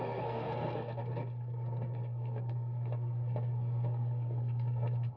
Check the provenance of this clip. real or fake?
fake